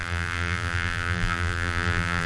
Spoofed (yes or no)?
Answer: yes